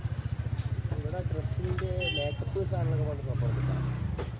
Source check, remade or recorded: recorded